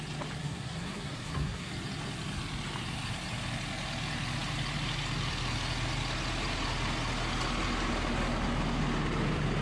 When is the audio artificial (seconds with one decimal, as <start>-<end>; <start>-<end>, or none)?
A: 0.4-1.7